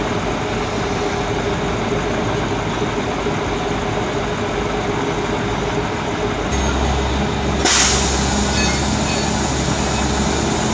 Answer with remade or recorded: recorded